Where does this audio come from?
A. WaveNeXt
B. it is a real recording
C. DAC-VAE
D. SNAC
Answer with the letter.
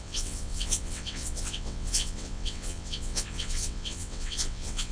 A